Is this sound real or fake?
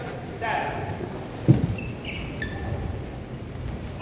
real